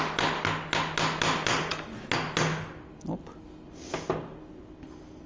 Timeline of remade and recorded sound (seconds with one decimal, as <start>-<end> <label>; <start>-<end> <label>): 0.0-5.3 recorded